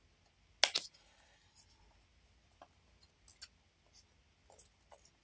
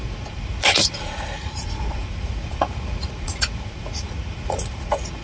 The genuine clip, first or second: first